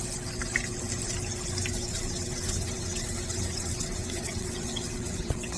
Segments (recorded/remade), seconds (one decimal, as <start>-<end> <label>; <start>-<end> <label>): 0.0-1.8 recorded; 1.8-5.6 remade